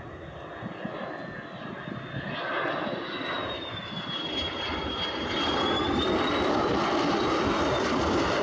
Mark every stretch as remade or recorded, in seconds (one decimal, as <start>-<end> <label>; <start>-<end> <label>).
0.0-8.4 recorded